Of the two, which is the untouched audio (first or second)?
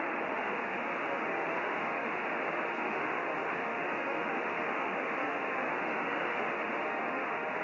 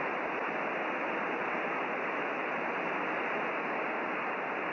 second